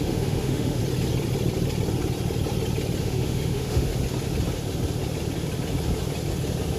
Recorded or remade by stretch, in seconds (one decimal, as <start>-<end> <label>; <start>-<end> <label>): 0.0-0.8 remade; 0.8-3.0 recorded; 3.0-3.9 remade; 3.9-6.8 recorded